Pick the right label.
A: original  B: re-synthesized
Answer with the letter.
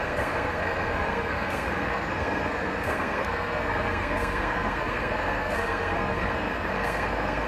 B